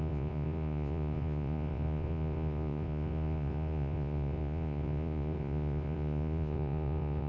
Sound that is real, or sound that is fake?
fake